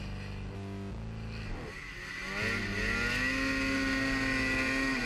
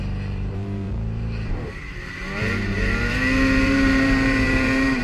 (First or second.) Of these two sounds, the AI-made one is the second